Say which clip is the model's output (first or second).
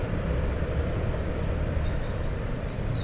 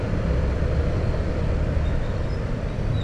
first